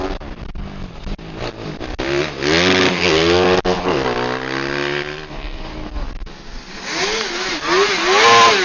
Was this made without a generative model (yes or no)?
yes